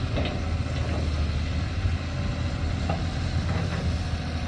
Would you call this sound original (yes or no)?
yes